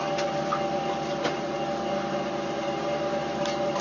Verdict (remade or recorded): recorded